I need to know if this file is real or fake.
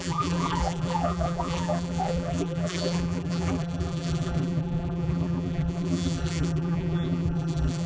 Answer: fake